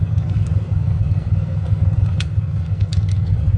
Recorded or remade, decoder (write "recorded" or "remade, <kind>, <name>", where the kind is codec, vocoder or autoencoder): remade, codec, SNAC